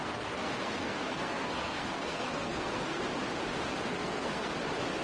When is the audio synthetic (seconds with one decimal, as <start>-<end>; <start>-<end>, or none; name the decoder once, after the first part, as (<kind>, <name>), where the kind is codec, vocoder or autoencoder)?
0.0-3.0 (codec, SNAC); 3.9-4.5